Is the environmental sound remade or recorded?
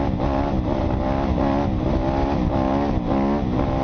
recorded